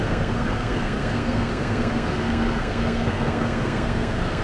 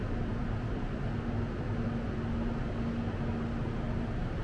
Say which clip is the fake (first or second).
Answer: first